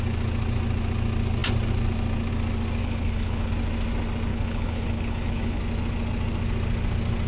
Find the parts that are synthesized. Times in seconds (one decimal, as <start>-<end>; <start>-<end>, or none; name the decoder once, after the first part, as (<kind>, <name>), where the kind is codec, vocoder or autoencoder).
2.8-3.5 (codec, HILCodec); 4.3-5.6